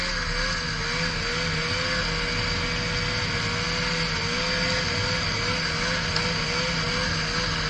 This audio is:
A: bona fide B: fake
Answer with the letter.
A